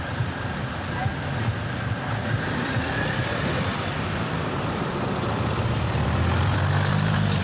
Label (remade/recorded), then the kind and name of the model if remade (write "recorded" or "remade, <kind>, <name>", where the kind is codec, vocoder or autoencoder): remade, vocoder, BigVGAN v2